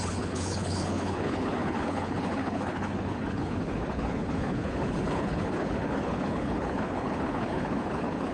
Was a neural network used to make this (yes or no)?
yes